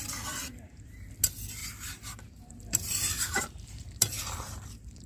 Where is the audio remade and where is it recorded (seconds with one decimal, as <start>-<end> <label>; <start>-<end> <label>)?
0.0-0.4 recorded; 0.4-1.1 remade; 1.1-1.6 recorded; 1.6-5.1 remade